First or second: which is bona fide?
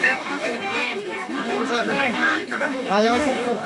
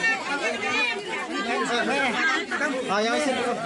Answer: second